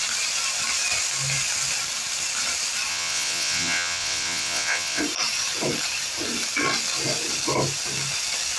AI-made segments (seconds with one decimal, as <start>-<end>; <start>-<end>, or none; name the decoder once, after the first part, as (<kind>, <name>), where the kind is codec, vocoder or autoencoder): 2.9-5.0 (vocoder, WaveNeXt)